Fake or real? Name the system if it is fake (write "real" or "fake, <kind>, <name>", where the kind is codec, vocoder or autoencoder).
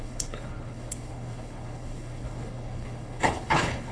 fake, codec, HILCodec